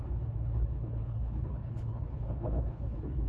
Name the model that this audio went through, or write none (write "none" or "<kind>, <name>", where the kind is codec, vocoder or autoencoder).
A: codec, HILCodec